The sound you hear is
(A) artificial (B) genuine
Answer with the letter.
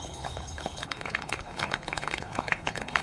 A